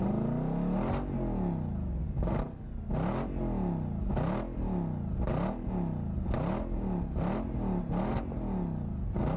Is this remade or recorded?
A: recorded